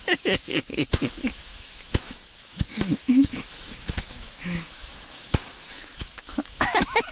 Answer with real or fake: fake